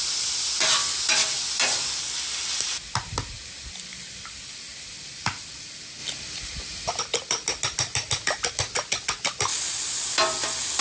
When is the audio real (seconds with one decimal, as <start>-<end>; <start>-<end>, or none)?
0.0-10.8